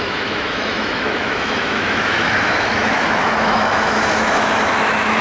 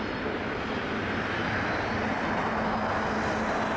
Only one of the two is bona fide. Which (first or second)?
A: second